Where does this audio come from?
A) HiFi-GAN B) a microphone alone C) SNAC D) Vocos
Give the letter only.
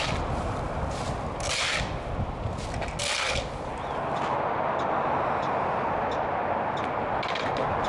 B